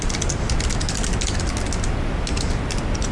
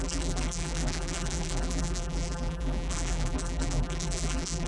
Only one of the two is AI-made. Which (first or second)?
second